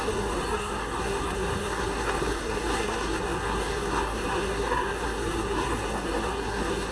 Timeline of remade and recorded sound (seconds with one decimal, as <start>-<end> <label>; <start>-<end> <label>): 0.0-6.9 remade